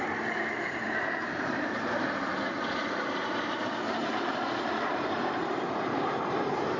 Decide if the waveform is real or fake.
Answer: fake